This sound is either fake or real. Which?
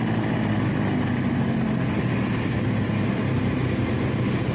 real